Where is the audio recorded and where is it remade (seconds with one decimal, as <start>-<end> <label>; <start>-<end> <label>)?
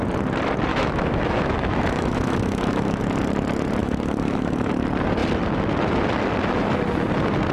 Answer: 0.0-0.7 recorded; 0.7-3.0 remade; 3.0-3.8 recorded; 3.8-4.7 remade; 4.7-7.5 recorded